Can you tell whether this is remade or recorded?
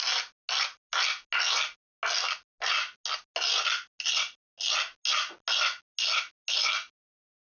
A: recorded